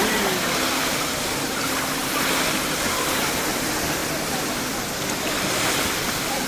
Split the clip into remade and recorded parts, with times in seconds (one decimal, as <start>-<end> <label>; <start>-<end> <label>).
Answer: 0.0-6.5 recorded